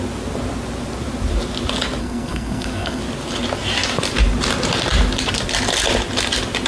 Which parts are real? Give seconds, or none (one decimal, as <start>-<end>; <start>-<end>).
0.0-2.0; 3.0-6.7